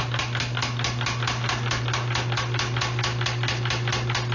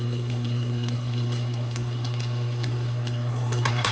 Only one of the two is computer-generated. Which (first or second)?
second